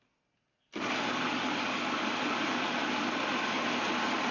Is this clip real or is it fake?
real